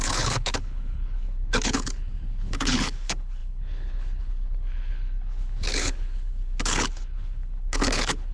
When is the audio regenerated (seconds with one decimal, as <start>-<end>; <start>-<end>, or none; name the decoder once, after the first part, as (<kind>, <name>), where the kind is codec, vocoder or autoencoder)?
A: 0.0-8.3 (codec, HILCodec)